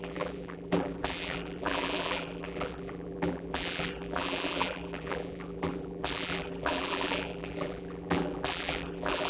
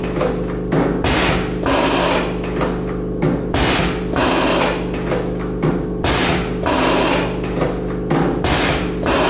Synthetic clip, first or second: first